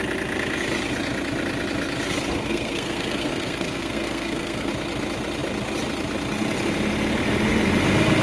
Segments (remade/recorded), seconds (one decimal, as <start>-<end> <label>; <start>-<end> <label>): 0.0-2.5 recorded; 2.5-4.7 remade; 4.7-8.2 recorded